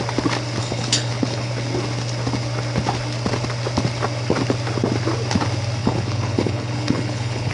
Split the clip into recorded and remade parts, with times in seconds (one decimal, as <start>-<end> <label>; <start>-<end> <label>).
0.0-0.6 recorded; 0.6-1.5 remade; 1.5-5.8 recorded; 5.8-7.5 remade